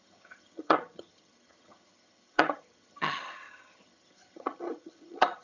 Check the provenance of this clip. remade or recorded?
remade